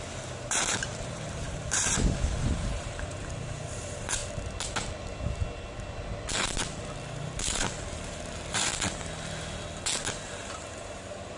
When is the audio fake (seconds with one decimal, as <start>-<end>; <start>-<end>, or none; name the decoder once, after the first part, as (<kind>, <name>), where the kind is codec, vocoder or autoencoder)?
0.0-4.2 (vocoder, BigVGAN v2); 7.2-8.7; 10.3-11.4